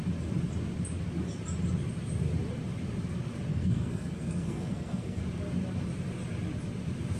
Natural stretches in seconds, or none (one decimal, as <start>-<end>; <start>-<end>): 0.0-3.5; 5.2-7.2